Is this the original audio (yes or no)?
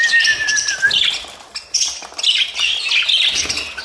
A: yes